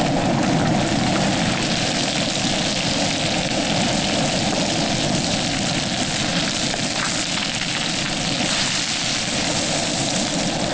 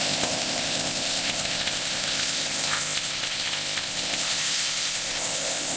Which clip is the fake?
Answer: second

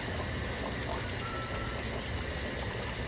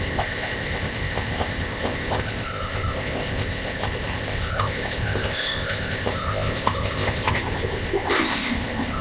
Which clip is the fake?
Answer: second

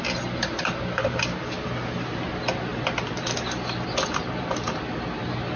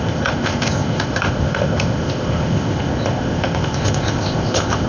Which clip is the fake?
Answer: second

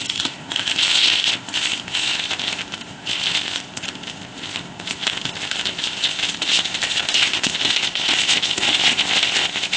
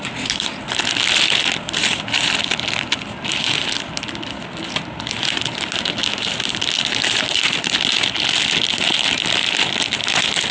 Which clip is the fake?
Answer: first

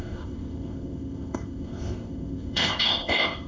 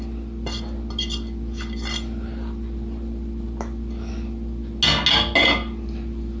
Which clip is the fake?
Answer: first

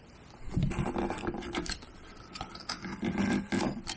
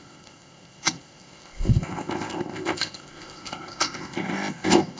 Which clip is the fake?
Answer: second